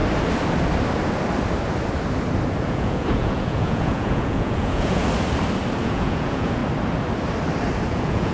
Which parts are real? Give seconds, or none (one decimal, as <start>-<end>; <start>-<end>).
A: 0.0-2.6; 5.0-5.8; 6.6-7.9